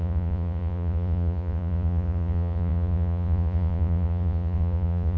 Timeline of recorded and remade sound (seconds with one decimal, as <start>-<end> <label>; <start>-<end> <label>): 0.0-5.2 remade